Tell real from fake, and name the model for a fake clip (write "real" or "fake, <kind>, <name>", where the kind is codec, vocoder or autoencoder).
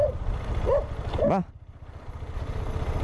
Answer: real